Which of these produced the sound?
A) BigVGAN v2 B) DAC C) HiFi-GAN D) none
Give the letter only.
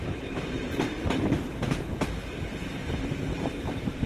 A